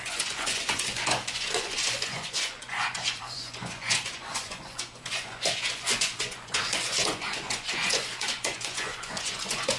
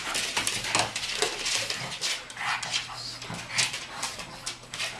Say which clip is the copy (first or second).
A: first